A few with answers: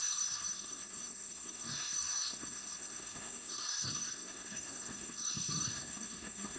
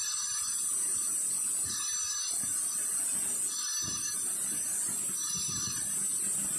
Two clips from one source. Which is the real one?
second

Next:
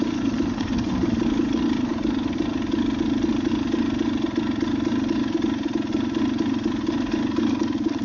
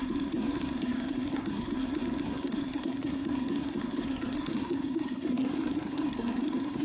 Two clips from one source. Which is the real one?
first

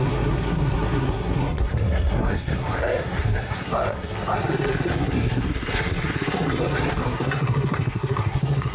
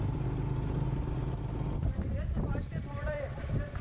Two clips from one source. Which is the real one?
second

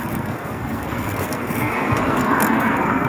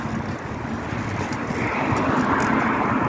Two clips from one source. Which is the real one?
second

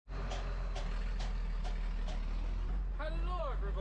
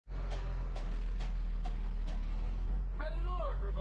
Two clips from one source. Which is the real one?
first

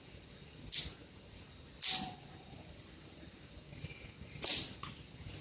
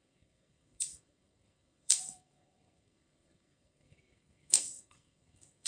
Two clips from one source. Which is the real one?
first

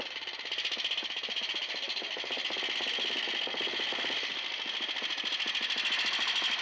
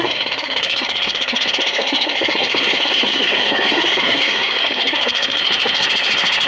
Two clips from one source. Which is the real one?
first